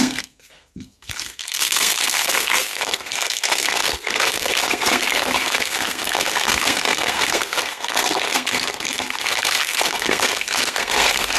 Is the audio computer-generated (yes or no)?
yes